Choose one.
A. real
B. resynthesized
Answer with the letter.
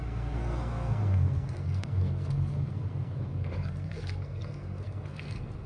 B